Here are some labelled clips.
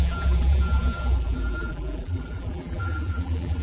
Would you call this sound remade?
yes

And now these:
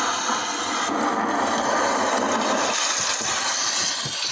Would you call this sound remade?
no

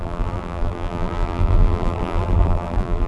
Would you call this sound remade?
yes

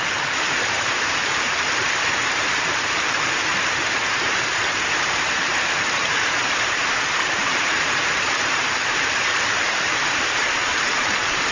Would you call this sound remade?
yes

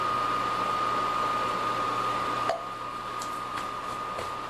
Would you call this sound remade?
no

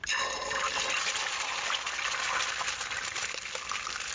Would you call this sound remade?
no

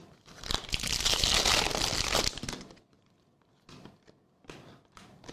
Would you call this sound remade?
no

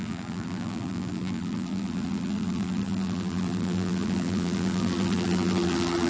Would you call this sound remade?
yes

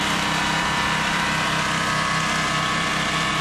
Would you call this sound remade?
yes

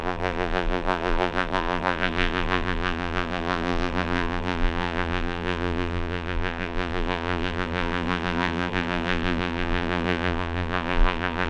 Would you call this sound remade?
yes